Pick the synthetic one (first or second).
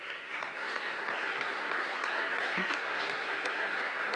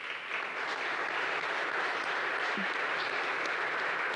first